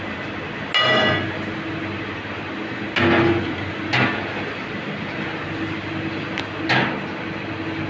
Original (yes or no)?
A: yes